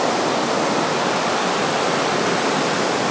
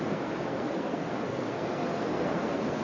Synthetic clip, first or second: second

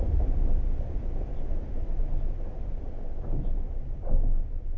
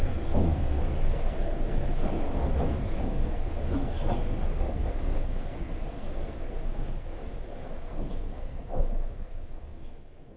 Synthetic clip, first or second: second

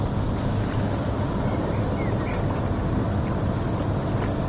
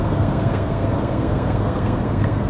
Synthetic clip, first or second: second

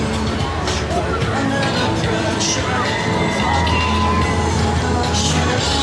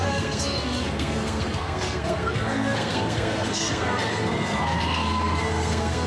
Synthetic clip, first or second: second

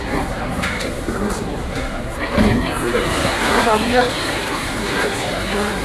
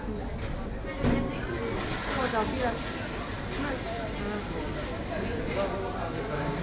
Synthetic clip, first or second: first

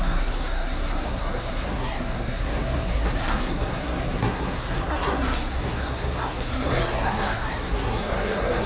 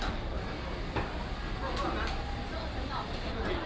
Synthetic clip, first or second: first